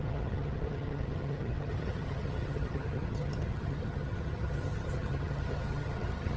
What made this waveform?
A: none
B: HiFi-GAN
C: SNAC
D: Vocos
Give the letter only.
B